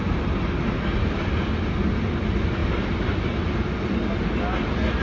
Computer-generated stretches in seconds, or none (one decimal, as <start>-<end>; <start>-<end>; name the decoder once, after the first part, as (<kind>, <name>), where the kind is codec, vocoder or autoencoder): none